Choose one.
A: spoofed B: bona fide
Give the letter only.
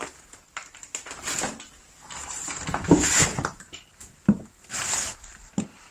A